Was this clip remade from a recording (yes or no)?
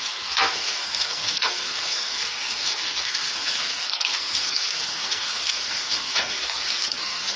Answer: yes